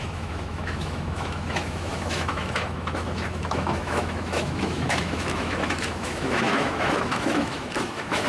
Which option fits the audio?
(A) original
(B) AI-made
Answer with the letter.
B